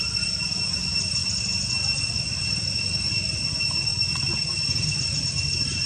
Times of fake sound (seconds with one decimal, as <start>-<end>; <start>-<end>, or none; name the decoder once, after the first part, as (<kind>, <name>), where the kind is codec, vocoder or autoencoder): none